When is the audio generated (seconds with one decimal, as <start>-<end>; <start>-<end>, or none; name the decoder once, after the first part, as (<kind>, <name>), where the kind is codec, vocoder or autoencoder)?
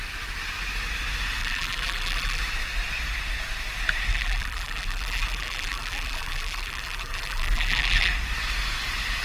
1.4-2.4 (vocoder, BigVGAN v2); 4.1-8.1